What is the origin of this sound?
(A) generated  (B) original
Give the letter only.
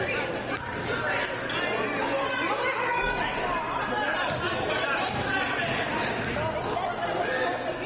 B